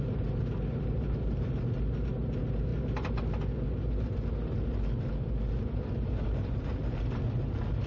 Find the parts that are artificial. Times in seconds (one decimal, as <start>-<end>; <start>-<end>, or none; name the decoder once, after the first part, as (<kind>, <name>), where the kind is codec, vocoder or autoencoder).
none